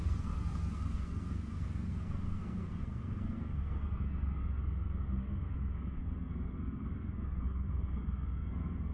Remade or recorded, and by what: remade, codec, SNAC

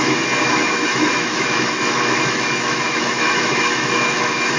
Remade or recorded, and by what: remade, autoencoder, DAC-VAE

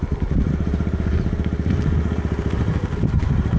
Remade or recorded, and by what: recorded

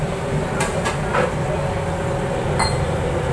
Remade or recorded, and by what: recorded